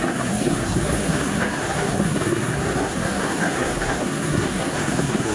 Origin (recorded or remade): remade